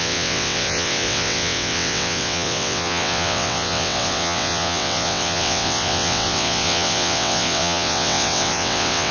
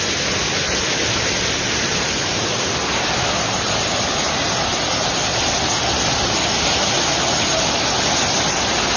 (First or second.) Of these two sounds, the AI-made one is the first